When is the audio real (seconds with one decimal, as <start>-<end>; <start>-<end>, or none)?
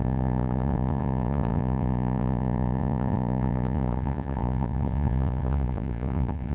none